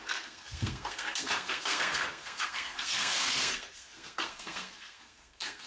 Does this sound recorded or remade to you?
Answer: remade